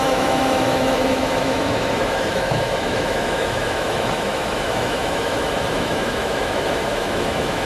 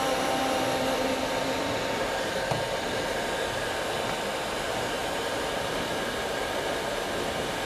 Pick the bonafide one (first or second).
second